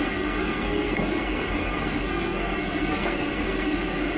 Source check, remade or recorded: remade